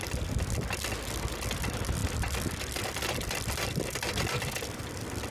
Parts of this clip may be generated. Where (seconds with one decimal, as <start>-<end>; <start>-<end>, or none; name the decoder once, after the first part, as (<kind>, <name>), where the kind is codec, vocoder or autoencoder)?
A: none